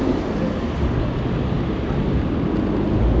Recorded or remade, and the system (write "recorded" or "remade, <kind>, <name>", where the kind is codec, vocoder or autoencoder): recorded